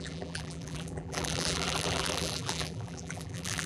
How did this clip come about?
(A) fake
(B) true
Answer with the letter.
A